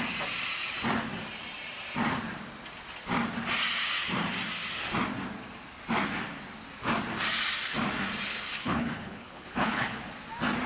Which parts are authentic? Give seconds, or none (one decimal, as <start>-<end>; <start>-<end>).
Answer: 0.0-8.3; 10.0-10.7